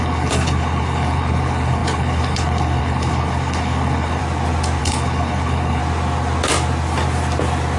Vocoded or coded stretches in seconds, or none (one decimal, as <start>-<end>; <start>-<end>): 0.0-4.2; 4.8-5.8